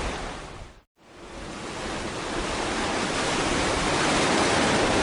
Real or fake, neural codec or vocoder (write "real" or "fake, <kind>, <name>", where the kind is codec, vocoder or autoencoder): real